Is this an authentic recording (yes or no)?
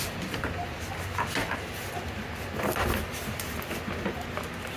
yes